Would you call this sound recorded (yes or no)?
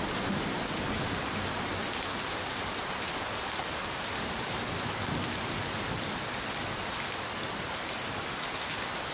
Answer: no